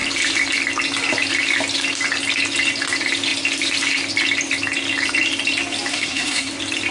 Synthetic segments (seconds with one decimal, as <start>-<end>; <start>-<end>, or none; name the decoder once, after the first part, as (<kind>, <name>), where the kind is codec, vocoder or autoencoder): 5.9-6.5 (codec, SNAC)